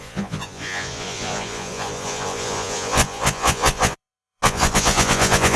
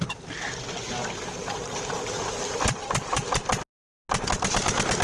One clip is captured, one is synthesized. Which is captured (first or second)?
second